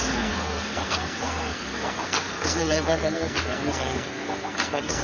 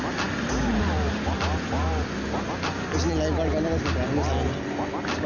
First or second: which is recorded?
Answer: second